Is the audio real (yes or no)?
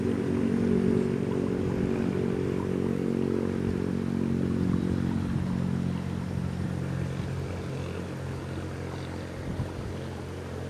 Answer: yes